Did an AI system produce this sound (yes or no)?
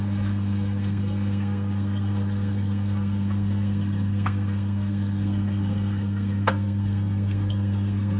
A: yes